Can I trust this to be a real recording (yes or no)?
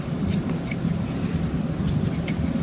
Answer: yes